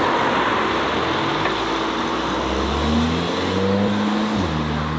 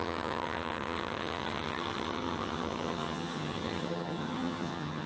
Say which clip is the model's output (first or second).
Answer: second